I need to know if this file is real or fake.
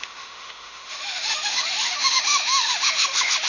fake